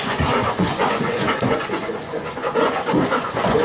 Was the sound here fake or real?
fake